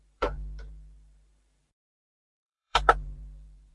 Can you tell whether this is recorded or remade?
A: remade